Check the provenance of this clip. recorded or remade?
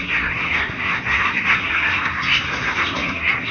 remade